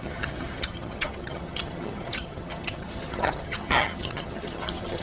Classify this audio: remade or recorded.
remade